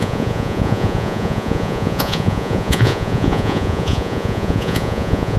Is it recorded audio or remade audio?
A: remade